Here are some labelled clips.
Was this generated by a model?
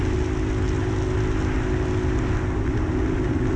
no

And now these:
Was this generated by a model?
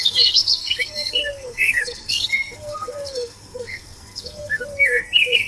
yes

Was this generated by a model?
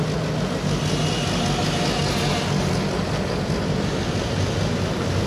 no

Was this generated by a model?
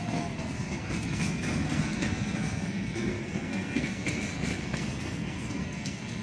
yes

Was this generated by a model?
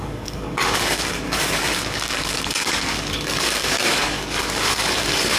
yes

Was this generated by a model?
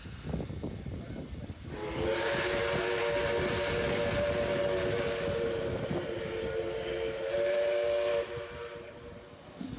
no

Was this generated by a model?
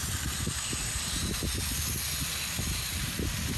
no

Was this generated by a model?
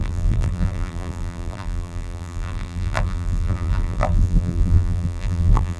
yes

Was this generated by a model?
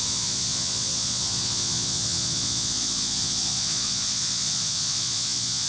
yes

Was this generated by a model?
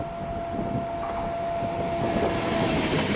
no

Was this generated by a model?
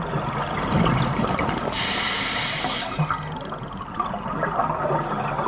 no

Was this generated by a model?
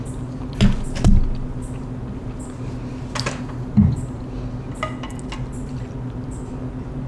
no